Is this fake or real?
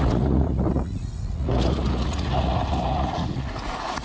fake